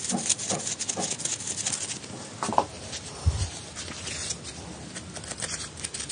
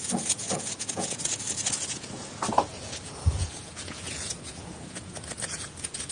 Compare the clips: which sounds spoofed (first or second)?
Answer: second